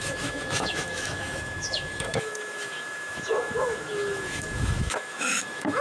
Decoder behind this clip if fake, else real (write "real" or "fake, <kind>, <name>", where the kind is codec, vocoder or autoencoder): fake, autoencoder, DAC-VAE